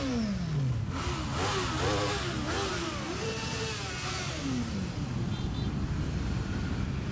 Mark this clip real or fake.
real